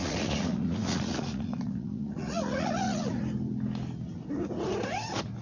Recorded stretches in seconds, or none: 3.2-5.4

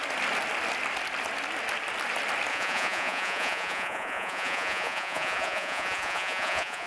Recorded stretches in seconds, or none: 0.0-2.5

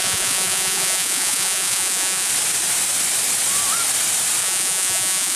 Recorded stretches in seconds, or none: 2.3-4.4

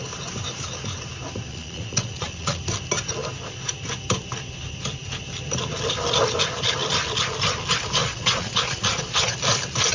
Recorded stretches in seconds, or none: 0.0-1.5; 2.6-8.0; 9.3-9.9